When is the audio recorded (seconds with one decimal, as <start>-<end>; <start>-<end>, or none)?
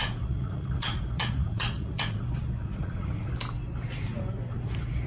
2.2-2.6; 3.3-5.1